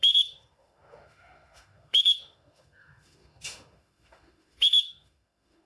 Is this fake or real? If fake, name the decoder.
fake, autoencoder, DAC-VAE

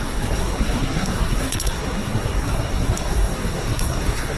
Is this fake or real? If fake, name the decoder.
fake, codec, SNAC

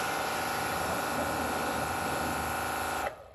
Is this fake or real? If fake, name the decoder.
real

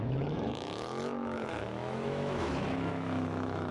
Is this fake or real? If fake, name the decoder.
fake, autoencoder, DAC-VAE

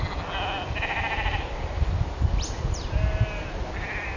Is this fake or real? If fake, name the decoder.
real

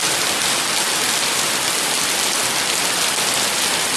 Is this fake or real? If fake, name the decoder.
real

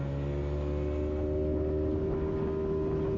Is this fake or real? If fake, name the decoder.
real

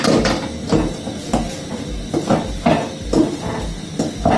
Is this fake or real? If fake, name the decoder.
real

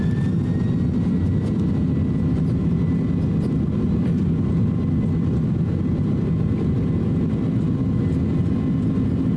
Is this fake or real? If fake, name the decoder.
real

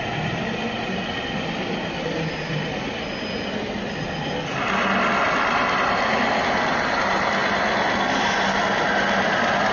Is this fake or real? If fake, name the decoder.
real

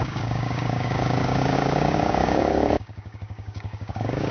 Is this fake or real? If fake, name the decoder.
fake, codec, DAC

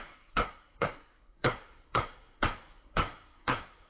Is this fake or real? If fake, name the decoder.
fake, codec, SNAC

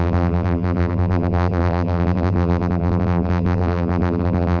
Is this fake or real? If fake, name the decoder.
fake, vocoder, BigVGAN v2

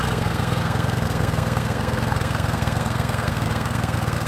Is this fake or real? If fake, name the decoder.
fake, codec, SNAC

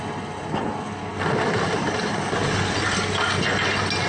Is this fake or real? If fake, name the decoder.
real